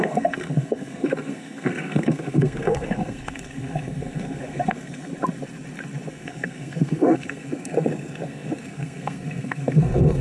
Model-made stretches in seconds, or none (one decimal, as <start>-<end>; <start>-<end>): 0.0-5.1; 6.1-10.2